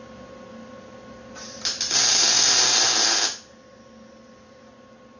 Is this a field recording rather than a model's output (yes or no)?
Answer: yes